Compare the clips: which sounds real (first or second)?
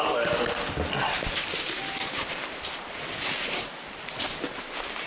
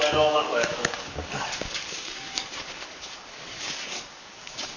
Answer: first